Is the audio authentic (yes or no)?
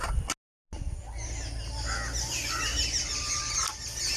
yes